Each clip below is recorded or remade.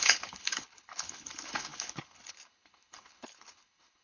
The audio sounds remade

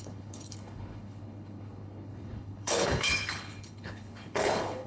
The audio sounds remade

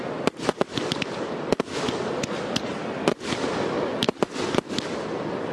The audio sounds recorded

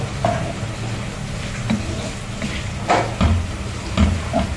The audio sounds recorded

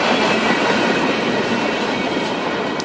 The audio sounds recorded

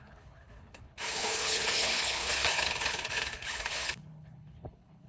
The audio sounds remade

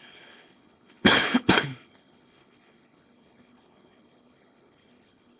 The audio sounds remade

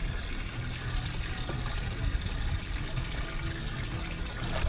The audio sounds recorded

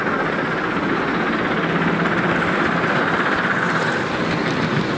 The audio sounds recorded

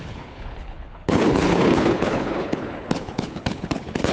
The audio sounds remade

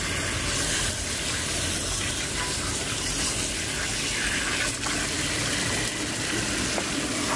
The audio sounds recorded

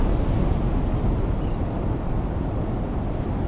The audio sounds recorded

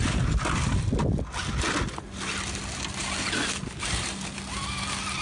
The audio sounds recorded